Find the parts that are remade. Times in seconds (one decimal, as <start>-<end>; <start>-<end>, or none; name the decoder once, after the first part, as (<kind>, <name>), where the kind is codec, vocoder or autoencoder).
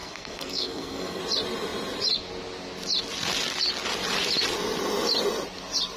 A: 0.0-1.2 (codec, SNAC)